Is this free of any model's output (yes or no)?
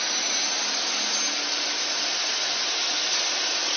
yes